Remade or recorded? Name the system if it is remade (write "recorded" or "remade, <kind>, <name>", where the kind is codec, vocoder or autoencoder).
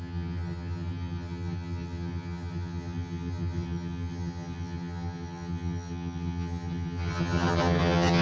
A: remade, vocoder, HiFi-GAN